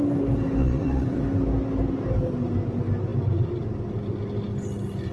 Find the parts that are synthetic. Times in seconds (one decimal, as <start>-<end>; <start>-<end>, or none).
0.6-1.2